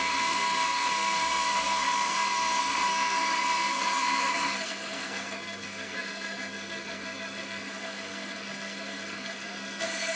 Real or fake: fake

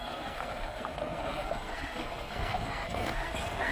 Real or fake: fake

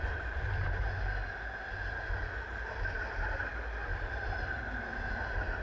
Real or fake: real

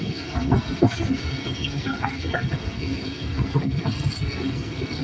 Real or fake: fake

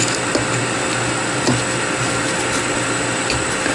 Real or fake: real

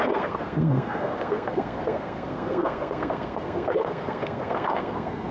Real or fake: fake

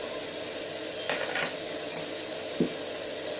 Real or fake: real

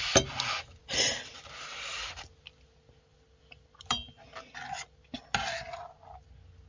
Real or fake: real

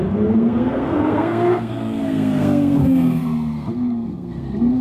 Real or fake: fake